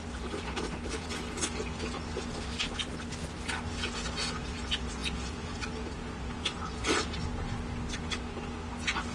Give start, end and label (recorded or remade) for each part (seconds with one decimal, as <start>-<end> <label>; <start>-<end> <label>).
0.0-9.1 recorded